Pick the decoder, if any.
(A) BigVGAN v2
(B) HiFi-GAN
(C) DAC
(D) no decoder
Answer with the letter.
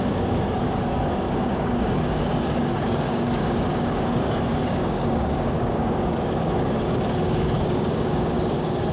C